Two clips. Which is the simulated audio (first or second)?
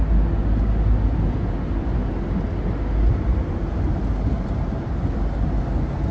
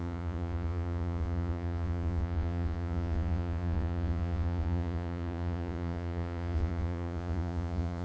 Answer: second